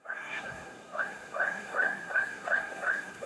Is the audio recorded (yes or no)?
no